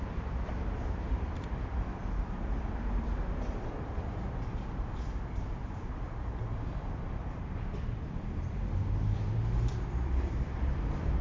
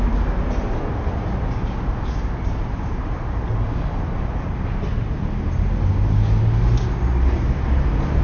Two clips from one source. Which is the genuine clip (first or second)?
second